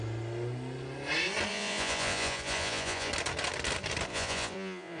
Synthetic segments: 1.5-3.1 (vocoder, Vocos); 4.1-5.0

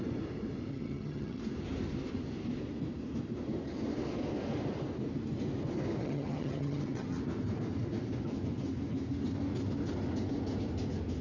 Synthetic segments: 0.7-1.4 (vocoder, HiFi-GAN); 6.0-7.2